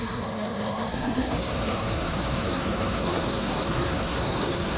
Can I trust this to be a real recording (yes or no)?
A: no